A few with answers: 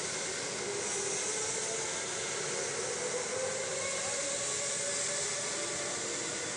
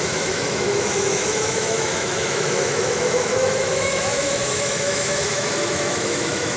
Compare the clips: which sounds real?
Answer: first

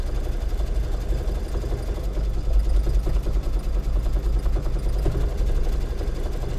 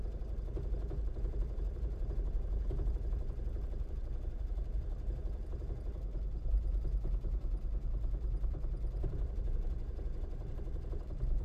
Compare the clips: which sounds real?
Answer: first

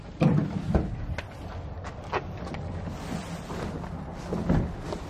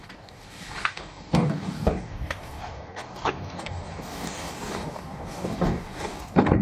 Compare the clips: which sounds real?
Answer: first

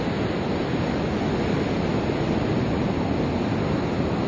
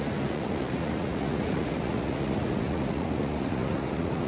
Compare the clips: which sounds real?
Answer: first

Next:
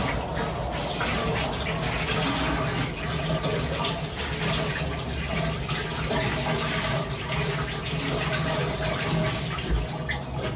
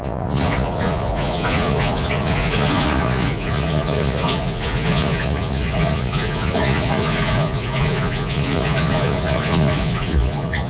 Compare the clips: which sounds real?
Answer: first